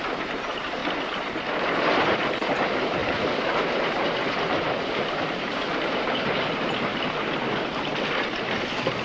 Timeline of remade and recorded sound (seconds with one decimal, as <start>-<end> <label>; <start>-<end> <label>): 0.0-0.8 remade; 0.8-1.5 recorded; 1.5-6.9 remade; 6.9-9.0 recorded